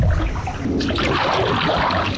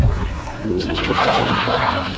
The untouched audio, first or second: first